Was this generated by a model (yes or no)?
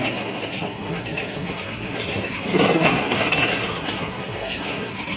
yes